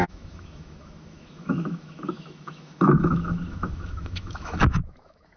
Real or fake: fake